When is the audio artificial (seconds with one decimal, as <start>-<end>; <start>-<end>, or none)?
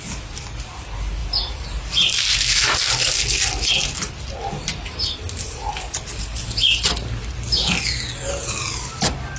none